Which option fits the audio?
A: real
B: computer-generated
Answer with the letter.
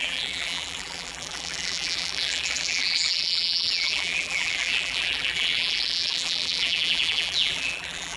B